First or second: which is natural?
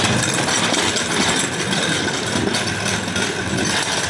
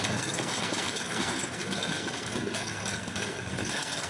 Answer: first